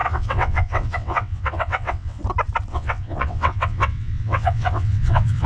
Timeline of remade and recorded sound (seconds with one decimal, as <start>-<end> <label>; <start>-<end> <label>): 0.0-2.2 remade; 2.2-2.7 recorded; 2.7-5.5 remade

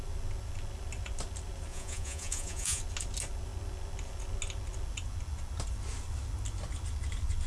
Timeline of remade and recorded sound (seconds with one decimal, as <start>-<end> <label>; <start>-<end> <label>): 0.0-1.7 recorded; 1.7-2.8 remade; 2.8-7.5 recorded

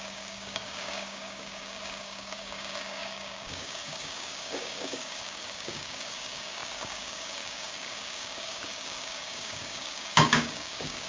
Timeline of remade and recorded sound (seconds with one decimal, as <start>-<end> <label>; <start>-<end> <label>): 0.0-11.1 remade

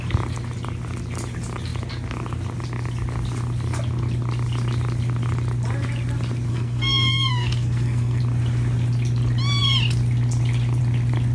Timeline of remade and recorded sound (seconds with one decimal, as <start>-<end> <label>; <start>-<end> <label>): 0.0-6.5 recorded; 6.5-8.2 remade; 8.2-11.3 recorded

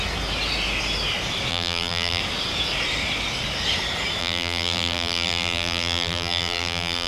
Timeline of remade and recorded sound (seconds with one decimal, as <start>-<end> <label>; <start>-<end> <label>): 0.0-1.5 recorded; 1.5-2.2 remade; 2.2-4.2 recorded; 4.2-7.1 remade

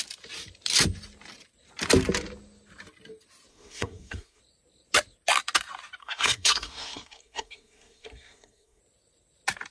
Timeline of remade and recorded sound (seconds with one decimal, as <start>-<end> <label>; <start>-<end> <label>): 0.0-3.5 recorded; 3.5-4.4 remade; 4.4-6.0 recorded; 6.0-8.8 remade; 8.8-9.7 recorded

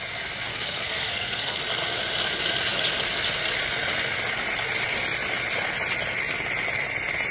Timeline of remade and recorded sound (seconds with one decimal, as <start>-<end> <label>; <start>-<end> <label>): 0.0-0.5 recorded; 0.5-1.6 remade; 1.6-7.3 recorded